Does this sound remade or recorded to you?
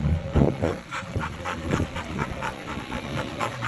remade